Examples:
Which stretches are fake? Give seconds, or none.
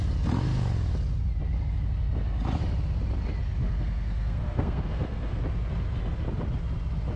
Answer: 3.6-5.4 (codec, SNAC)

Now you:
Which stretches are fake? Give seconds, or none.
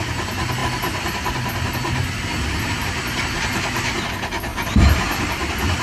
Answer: none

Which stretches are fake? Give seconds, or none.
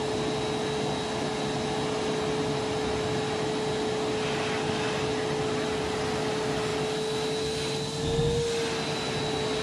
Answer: none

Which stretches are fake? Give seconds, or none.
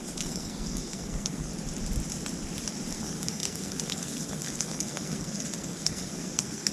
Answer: 0.0-1.5 (codec, SNAC); 2.9-6.7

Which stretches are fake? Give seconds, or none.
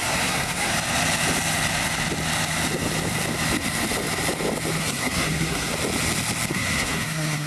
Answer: 0.0-0.7 (codec, SNAC); 4.8-5.7; 6.5-7.5